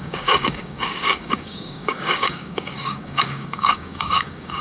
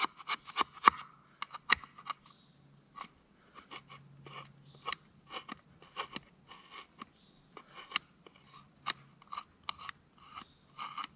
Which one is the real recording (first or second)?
second